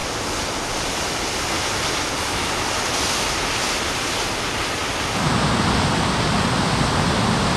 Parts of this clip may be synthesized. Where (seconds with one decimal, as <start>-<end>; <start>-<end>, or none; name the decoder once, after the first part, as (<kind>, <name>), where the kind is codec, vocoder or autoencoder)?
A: none